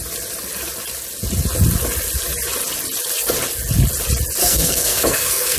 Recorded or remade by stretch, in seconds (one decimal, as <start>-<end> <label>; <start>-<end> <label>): 0.0-4.4 recorded; 4.4-5.6 remade